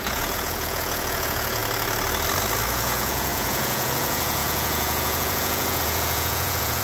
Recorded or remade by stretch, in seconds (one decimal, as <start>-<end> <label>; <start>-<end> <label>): 0.0-1.6 remade; 1.6-2.7 recorded; 2.7-6.8 remade